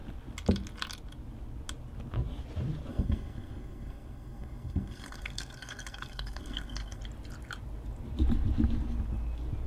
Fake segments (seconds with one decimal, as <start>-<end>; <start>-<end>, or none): 2.9-7.0